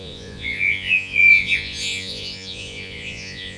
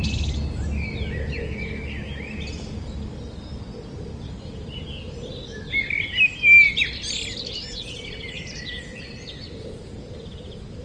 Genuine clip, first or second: second